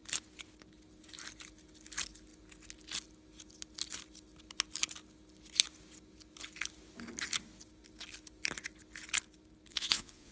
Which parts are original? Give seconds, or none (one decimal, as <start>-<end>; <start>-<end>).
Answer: 0.0-9.7